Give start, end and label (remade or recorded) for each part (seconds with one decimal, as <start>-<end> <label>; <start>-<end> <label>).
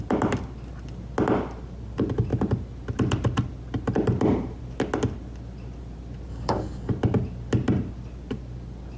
0.0-6.3 recorded; 6.3-6.9 remade; 6.9-9.0 recorded